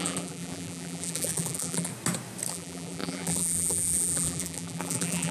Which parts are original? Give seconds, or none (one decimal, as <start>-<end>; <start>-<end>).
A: 1.9-2.5